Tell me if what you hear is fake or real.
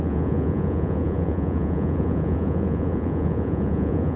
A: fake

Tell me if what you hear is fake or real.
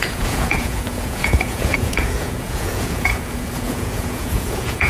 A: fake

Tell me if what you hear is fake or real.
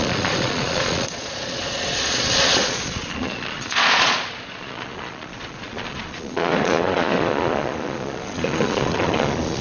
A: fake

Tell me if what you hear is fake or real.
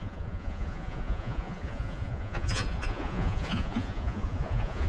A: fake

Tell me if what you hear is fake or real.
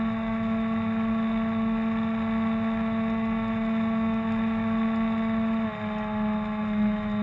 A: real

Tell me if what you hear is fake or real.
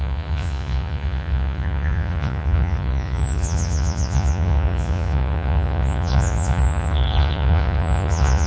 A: fake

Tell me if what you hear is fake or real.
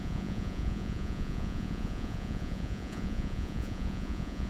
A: fake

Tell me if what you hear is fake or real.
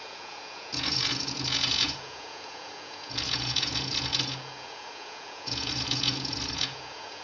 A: fake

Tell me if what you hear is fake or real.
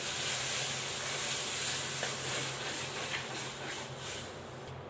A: real